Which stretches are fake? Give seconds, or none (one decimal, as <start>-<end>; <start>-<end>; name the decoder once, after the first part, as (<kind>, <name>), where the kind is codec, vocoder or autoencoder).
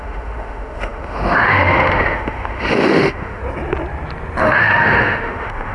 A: 0.0-3.4 (autoencoder, DAC-VAE); 4.4-5.7